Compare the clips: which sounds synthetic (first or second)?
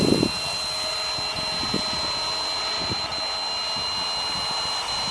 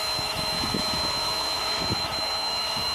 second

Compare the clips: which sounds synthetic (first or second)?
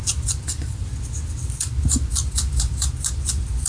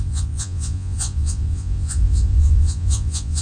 second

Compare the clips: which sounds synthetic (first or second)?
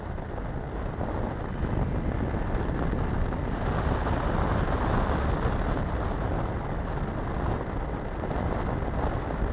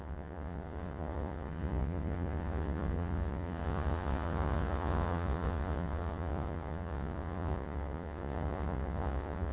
second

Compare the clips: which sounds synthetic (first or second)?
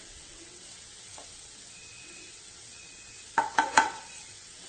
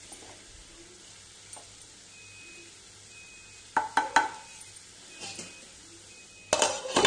first